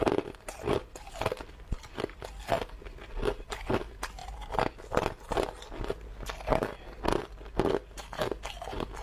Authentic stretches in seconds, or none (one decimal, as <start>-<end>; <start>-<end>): 0.0-9.0